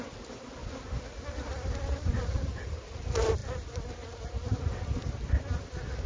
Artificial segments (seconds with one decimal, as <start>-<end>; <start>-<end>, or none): none